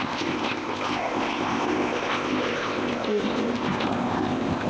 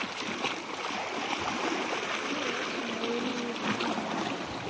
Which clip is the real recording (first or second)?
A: second